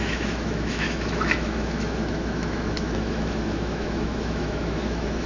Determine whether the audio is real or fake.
fake